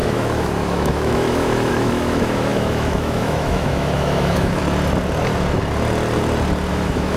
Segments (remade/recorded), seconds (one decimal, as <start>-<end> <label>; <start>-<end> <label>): 0.0-4.6 remade; 4.6-6.7 recorded; 6.7-7.2 remade

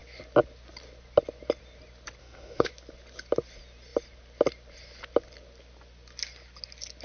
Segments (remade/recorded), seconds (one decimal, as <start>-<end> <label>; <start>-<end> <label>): 0.0-2.2 recorded; 2.2-2.7 remade; 2.7-7.0 recorded

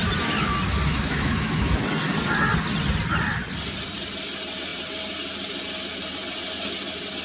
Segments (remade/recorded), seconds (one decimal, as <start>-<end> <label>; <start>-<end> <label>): 0.0-0.9 recorded; 0.9-1.8 remade; 1.8-7.2 recorded

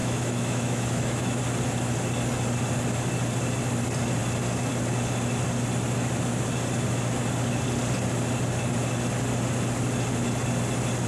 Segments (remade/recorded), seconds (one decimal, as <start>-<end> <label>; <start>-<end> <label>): 0.0-1.4 remade; 1.4-11.1 recorded

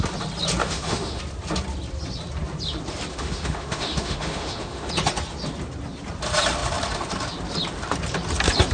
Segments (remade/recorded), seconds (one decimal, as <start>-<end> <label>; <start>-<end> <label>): 0.0-0.6 recorded; 0.6-1.2 remade; 1.2-3.1 recorded; 3.1-4.9 remade; 4.9-8.7 recorded

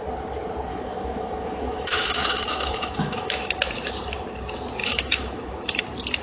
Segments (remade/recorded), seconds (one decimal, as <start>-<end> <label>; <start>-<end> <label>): 0.0-0.7 recorded; 0.7-3.5 remade; 3.5-4.8 recorded; 4.8-5.8 remade; 5.8-6.2 recorded

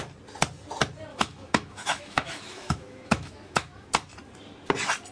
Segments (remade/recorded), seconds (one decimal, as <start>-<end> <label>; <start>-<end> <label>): 0.0-1.1 recorded; 1.1-3.9 remade; 3.9-5.1 recorded

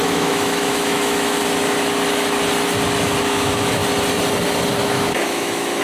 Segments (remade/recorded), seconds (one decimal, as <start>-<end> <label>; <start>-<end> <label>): 0.0-1.4 remade; 1.4-3.2 recorded; 3.2-3.8 remade; 3.8-4.8 recorded; 4.8-5.8 remade